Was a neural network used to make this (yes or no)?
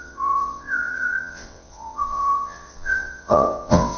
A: yes